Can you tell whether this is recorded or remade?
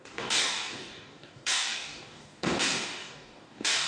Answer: remade